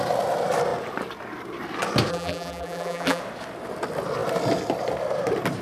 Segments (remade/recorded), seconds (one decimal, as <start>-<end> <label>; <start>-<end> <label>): 0.0-2.1 recorded; 2.1-3.2 remade; 3.2-5.6 recorded